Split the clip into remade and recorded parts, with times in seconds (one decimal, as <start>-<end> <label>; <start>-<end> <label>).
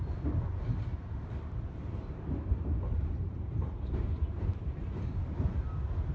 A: 0.0-0.9 recorded; 0.9-4.6 remade; 4.6-6.1 recorded